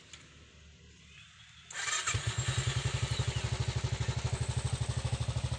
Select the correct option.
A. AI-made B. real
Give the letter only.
B